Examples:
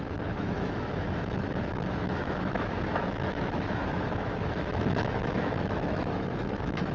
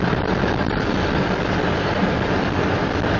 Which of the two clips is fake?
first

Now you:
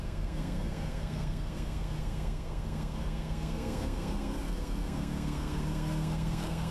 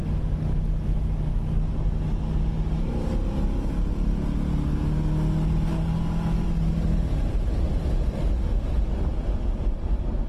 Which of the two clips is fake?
first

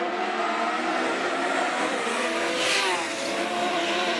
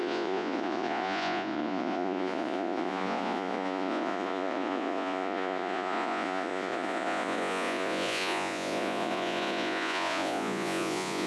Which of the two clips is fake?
second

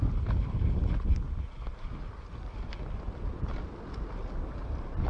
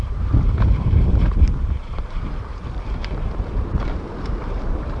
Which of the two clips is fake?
second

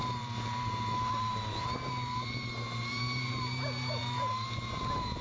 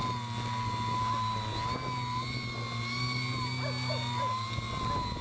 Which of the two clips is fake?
first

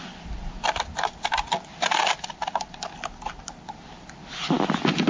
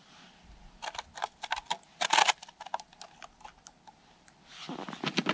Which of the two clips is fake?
first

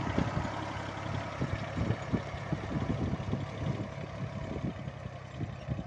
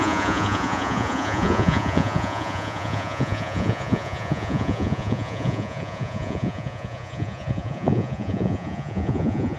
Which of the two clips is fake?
second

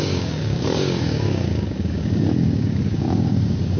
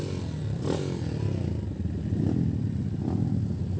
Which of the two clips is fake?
first